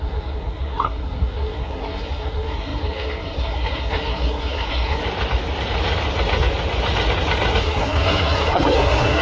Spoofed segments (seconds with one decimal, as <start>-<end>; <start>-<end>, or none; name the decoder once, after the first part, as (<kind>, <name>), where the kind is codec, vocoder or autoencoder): 0.0-5.0 (codec, SNAC); 7.6-9.2